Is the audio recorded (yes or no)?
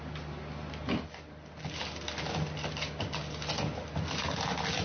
yes